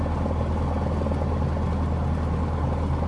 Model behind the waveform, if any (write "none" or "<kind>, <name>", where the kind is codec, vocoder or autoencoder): none